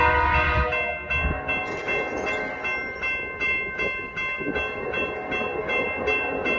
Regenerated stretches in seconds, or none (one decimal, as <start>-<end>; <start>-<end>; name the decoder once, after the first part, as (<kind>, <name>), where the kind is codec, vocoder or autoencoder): none